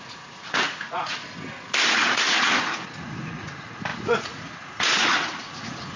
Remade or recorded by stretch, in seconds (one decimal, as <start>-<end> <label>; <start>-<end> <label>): 0.0-1.2 remade; 1.2-1.9 recorded; 1.9-6.0 remade